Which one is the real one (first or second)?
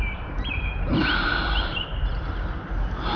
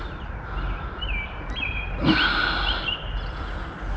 second